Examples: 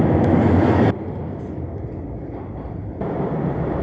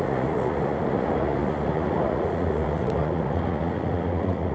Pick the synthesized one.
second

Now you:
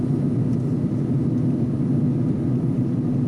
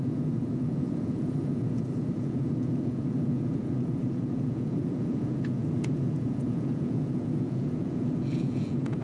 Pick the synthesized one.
second